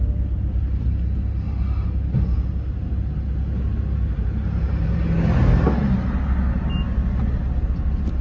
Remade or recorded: recorded